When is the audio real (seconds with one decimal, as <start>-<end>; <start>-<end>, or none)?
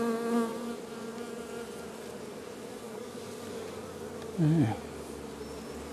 0.0-2.7; 3.2-5.9